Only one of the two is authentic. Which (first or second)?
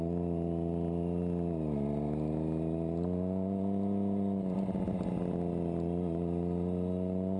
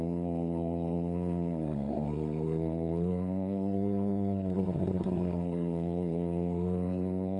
first